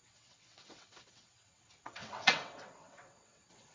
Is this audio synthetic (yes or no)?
yes